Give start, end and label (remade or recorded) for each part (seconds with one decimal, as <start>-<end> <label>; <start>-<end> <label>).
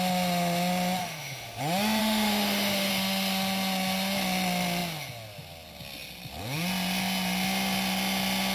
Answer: 0.0-1.0 recorded; 1.0-1.6 remade; 1.6-2.0 recorded; 2.0-2.9 remade; 2.9-8.5 recorded